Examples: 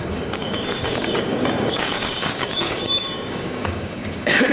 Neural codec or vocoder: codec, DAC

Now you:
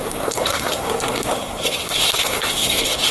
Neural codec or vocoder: codec, SNAC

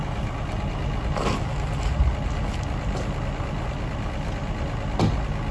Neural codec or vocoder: none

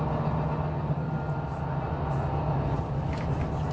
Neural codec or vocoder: none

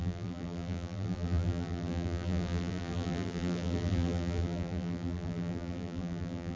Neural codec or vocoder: vocoder, BigVGAN v2